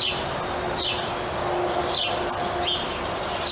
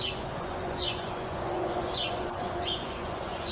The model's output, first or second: second